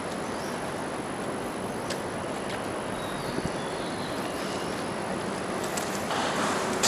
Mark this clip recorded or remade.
remade